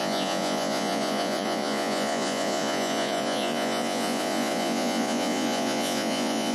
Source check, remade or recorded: remade